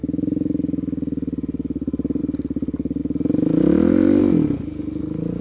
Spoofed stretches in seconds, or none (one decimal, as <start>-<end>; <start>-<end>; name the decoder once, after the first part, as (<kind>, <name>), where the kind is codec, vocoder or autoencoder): none